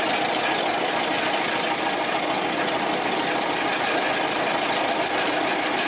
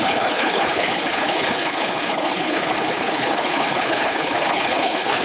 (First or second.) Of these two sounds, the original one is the first